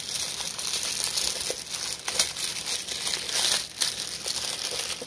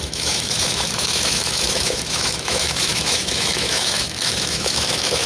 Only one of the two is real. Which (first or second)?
first